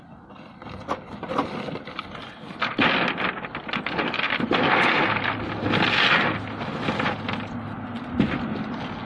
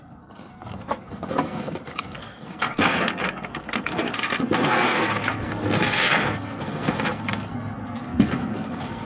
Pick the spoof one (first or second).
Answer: second